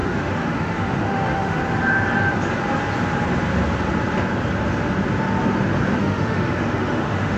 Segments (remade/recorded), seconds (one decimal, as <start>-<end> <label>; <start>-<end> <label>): 0.0-1.6 remade; 1.6-6.0 recorded; 6.0-7.4 remade